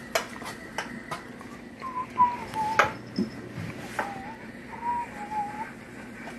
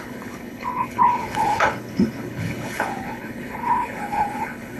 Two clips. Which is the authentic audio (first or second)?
first